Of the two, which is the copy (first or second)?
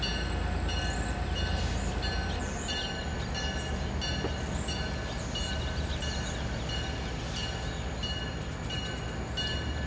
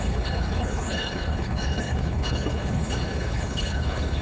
second